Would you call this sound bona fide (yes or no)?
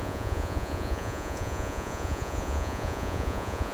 no